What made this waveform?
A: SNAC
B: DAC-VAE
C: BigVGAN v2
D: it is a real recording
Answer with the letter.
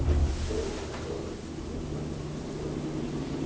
D